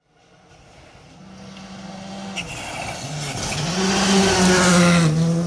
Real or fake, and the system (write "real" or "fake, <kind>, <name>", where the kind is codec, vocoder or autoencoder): real